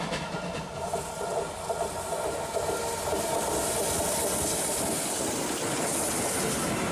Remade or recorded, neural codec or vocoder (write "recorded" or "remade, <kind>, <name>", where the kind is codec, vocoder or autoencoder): recorded